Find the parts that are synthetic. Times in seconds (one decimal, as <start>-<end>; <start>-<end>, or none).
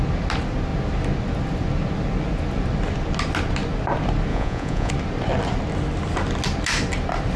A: 4.3-4.9